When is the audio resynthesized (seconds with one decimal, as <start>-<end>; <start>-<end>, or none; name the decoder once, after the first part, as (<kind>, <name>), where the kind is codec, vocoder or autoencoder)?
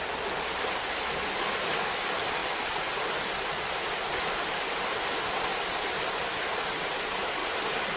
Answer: 2.4-4.4 (vocoder, BigVGAN v2); 5.5-6.9; 7.4-8.0